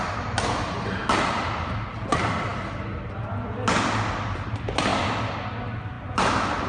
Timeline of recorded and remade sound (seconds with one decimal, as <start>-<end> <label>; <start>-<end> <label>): 0.0-6.7 recorded